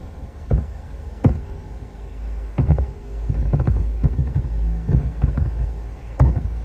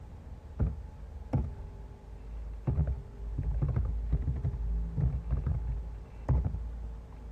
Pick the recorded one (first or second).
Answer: second